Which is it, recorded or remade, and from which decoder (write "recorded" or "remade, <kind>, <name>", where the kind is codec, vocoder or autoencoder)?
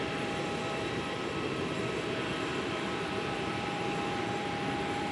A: remade, vocoder, BigVGAN v2